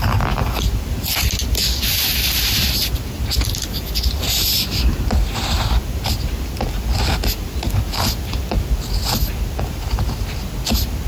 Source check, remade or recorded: recorded